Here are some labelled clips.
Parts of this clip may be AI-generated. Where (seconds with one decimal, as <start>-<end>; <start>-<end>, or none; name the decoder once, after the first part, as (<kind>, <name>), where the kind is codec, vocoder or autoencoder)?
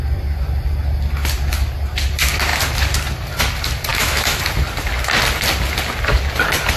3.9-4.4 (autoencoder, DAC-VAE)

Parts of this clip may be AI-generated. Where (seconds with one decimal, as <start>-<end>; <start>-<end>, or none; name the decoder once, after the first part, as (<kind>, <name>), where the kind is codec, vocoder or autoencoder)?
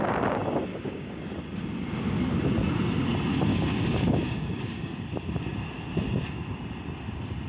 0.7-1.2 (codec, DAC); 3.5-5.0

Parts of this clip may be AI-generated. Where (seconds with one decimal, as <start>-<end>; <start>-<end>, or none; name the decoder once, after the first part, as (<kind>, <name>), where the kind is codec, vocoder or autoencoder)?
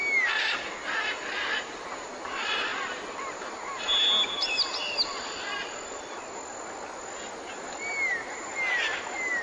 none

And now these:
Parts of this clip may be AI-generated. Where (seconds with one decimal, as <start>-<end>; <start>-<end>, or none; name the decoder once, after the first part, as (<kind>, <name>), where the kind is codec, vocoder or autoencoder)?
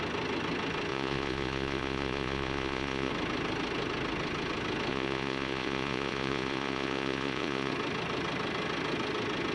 0.9-3.1 (vocoder, Vocos); 4.9-7.7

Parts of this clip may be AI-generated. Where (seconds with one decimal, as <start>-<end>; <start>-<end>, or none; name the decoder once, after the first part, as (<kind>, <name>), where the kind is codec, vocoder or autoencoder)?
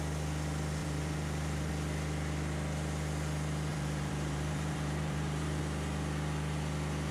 0.8-1.7 (vocoder, BigVGAN v2); 3.7-5.6